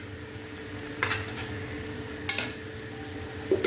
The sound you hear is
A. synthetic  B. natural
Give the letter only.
B